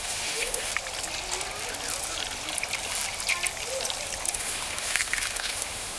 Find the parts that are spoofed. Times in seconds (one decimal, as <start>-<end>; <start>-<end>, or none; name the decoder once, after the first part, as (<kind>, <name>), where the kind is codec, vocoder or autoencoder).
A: 0.0-0.7 (autoencoder, DAC-VAE); 4.3-6.0